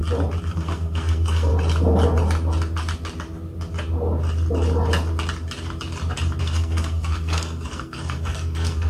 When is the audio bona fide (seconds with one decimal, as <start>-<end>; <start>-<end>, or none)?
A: 0.0-0.5; 1.5-6.4